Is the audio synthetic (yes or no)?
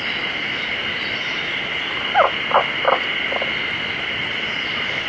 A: no